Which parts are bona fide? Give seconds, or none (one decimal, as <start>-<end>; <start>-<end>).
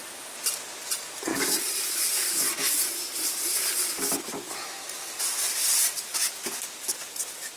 0.0-1.3; 1.9-7.6